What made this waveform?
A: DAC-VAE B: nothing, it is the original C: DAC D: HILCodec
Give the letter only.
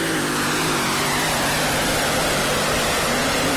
B